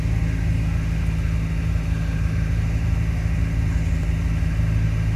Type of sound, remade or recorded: recorded